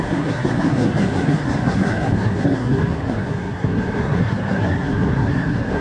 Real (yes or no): no